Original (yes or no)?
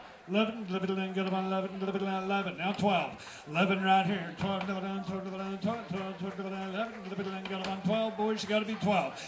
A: yes